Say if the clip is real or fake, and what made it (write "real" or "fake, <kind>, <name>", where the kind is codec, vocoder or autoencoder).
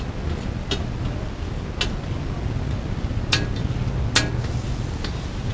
real